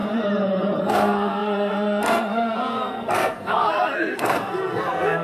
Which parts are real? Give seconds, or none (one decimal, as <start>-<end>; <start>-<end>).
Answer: 0.0-0.8